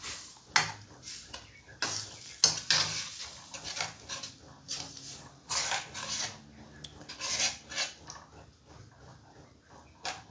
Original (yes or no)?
yes